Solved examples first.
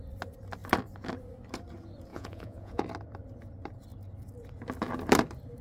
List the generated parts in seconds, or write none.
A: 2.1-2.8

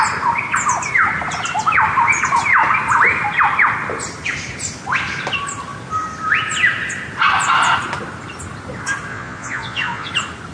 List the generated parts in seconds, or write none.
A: 9.1-10.1

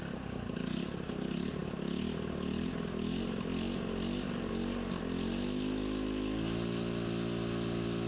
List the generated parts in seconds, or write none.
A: none

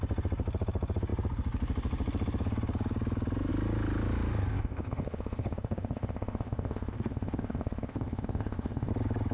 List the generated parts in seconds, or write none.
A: 4.5-8.9

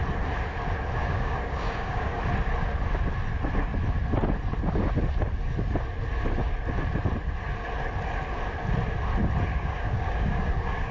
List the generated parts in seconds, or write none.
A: 1.0-2.2; 9.5-10.9

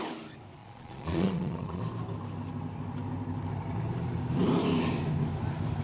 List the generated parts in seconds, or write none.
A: 0.6-1.8